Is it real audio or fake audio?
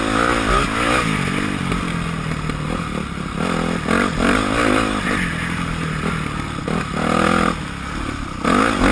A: real